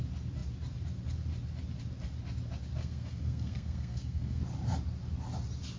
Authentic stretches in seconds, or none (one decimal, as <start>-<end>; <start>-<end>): 0.0-2.8; 4.4-5.8